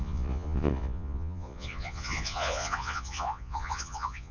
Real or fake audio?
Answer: fake